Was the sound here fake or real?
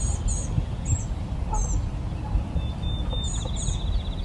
real